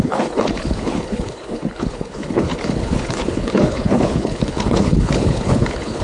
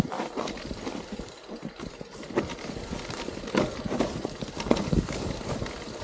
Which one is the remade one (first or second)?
first